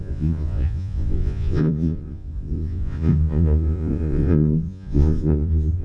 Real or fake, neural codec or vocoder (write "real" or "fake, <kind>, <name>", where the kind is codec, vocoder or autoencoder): fake, vocoder, Vocos